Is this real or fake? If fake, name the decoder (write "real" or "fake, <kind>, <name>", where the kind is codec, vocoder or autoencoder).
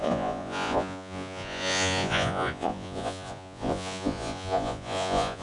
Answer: fake, vocoder, Vocos